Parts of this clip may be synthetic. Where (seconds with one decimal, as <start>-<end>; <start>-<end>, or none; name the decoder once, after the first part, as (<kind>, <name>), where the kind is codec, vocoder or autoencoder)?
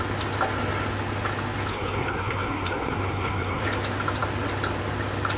1.7-3.6 (codec, SNAC)